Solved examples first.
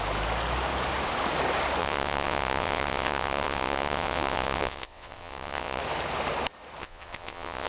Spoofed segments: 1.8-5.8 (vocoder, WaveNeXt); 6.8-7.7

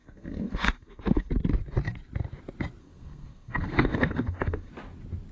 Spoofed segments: 0.0-1.3 (codec, SNAC); 2.8-4.7

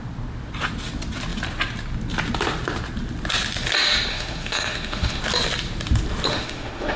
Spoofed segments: 4.1-5.2 (autoencoder, DAC-VAE); 6.3-7.0

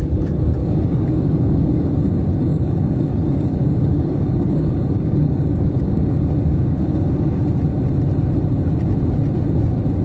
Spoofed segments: 0.6-1.9 (codec, DAC); 2.5-7.4

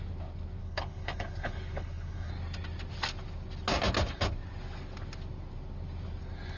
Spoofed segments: 0.6-2.3 (codec, HILCodec)

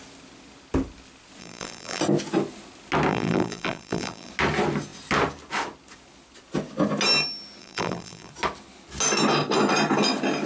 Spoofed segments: 1.4-2.0 (vocoder, BigVGAN v2); 3.1-4.3; 7.6-8.3

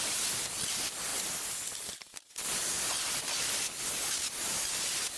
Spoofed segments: none